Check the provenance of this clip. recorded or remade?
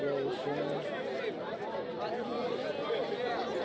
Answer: recorded